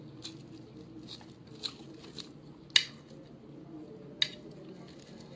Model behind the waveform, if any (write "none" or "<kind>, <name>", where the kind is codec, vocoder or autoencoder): none